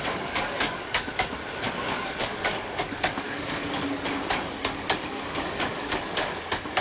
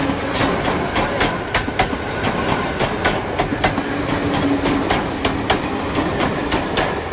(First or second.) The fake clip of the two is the first